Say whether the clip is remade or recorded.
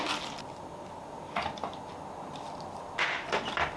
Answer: recorded